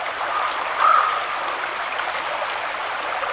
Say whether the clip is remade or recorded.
recorded